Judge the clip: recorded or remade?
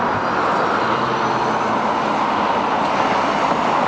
recorded